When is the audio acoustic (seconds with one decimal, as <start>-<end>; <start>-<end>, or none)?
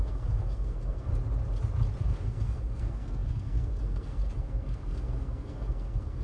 1.1-2.0